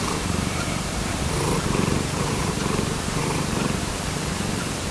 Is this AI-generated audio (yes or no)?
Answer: yes